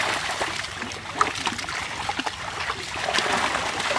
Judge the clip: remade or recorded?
recorded